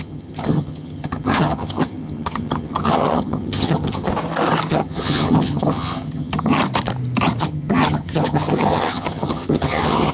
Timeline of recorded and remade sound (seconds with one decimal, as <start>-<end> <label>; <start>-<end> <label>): 0.0-4.1 remade; 4.1-4.7 recorded; 4.7-6.6 remade; 6.6-7.4 recorded; 7.4-10.1 remade